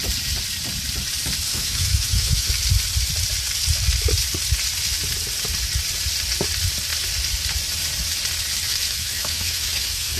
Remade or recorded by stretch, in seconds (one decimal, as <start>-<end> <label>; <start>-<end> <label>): 0.0-1.5 recorded; 1.5-2.5 remade; 2.5-8.7 recorded; 8.7-10.2 remade